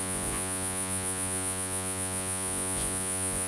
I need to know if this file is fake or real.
fake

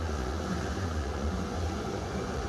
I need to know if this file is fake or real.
fake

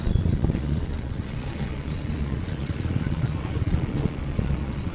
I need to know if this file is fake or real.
fake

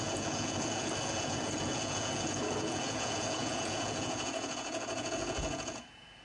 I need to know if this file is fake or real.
fake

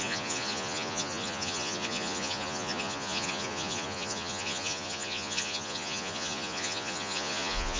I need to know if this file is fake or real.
fake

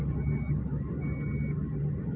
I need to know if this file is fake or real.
real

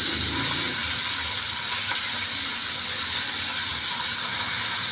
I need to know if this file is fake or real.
real